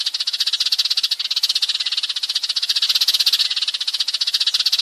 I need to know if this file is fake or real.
real